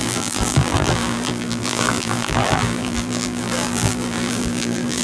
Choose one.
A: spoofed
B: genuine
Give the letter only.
A